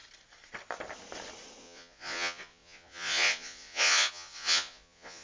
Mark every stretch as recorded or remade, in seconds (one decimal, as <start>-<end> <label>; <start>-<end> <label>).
0.0-1.6 recorded; 1.6-5.2 remade